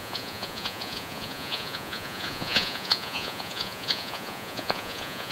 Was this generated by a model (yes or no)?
yes